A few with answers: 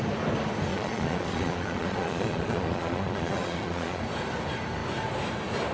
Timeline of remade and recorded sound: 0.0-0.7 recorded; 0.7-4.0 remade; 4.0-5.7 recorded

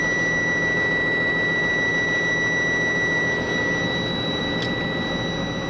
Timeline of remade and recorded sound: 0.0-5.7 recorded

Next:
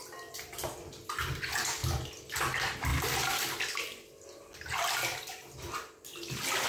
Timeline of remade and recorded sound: 0.0-6.7 recorded